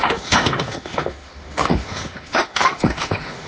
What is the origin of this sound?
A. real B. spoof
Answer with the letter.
B